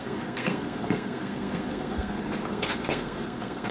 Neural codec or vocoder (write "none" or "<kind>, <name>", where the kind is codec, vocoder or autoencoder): codec, SNAC